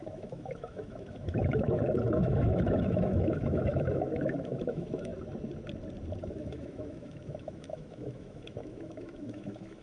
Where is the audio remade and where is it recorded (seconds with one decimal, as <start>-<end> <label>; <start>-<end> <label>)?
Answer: 0.0-5.1 remade; 5.1-6.2 recorded; 6.2-9.8 remade